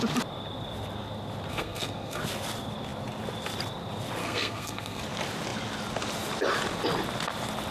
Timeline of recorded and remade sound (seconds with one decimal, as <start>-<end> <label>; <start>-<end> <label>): 0.0-1.5 recorded; 1.5-2.2 remade; 2.2-4.2 recorded; 4.2-5.0 remade; 5.0-7.7 recorded